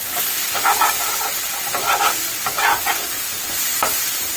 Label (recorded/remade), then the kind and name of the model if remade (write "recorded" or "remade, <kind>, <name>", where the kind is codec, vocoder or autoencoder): recorded